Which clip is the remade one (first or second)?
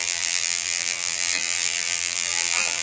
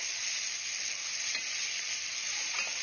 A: first